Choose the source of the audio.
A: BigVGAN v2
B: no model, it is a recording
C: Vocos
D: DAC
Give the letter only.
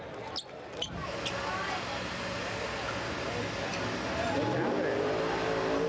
B